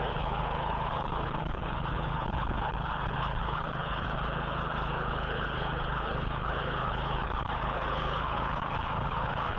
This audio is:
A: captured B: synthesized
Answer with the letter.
B